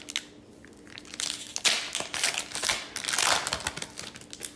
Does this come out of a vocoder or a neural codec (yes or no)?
no